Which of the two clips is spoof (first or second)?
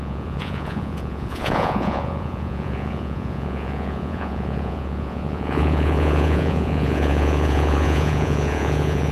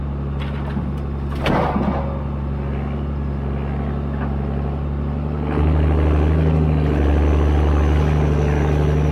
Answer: first